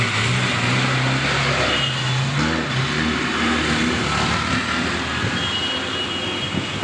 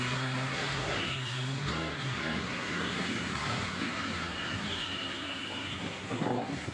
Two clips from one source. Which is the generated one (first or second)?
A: second